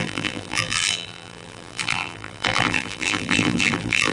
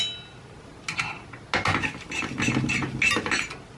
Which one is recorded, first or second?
second